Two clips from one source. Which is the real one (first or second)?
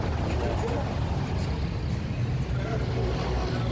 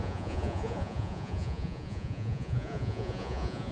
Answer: first